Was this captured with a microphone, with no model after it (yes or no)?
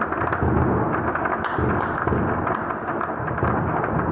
yes